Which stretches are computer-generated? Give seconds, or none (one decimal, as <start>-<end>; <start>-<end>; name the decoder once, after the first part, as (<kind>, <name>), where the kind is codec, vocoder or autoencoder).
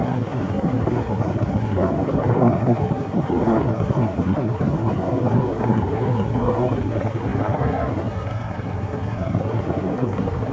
0.0-10.5 (codec, SNAC)